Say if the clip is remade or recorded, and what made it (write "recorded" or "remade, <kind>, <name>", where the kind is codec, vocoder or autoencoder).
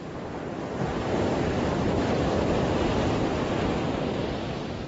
recorded